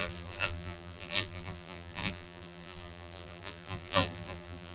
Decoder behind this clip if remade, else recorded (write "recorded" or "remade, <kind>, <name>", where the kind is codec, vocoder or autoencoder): remade, vocoder, BigVGAN v2